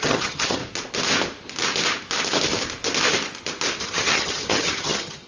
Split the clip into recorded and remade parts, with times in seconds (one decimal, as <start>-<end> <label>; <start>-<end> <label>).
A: 0.0-0.6 remade; 0.6-3.8 recorded; 3.8-5.3 remade